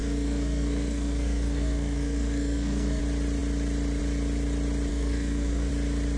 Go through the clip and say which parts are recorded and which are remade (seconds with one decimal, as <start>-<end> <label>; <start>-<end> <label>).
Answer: 0.0-3.0 remade; 3.0-4.9 recorded; 4.9-5.7 remade; 5.7-6.2 recorded